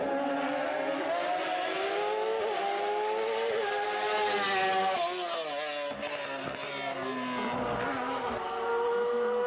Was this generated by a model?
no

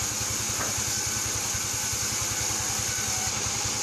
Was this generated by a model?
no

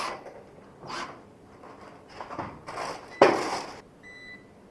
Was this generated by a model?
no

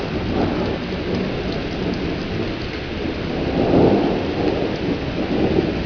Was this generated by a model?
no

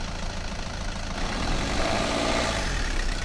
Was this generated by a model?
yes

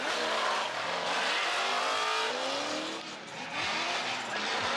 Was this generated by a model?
no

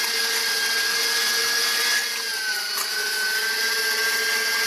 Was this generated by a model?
no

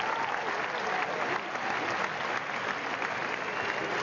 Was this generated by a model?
no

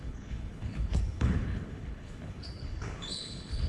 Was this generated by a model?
yes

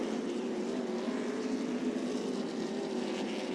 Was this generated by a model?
no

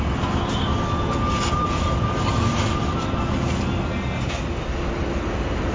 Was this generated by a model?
no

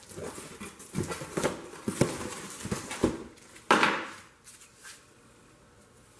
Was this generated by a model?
no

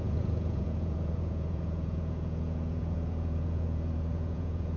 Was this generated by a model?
yes